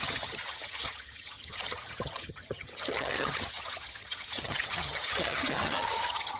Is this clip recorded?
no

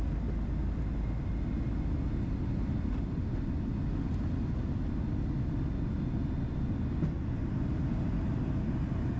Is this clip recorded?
yes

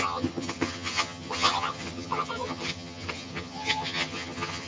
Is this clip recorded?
no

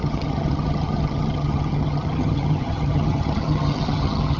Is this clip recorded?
no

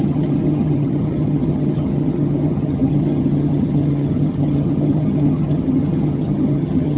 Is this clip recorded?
no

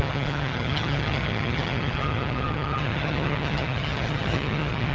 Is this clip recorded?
no